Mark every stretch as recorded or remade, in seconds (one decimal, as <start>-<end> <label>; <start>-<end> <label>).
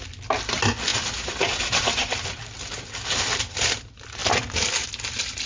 0.0-5.5 recorded